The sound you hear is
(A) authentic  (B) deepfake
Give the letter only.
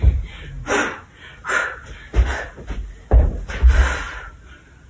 A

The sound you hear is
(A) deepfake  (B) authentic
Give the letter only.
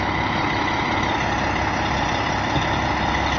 B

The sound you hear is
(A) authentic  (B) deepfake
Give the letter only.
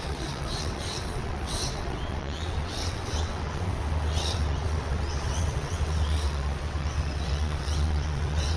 B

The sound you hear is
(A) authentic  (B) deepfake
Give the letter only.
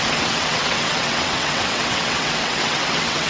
B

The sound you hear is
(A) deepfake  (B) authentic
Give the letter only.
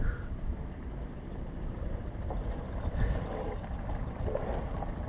B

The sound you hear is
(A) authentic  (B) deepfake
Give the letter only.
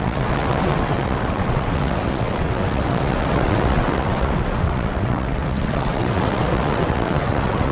B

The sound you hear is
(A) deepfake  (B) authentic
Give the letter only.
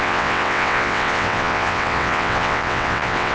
A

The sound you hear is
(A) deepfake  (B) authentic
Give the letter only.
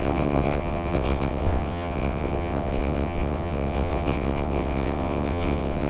A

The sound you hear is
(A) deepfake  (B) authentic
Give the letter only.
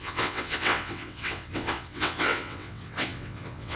A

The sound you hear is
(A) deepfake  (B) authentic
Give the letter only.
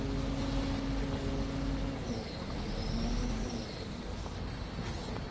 B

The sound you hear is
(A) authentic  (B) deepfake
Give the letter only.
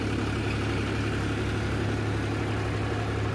A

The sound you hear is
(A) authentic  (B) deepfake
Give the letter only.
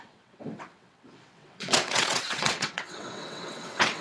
B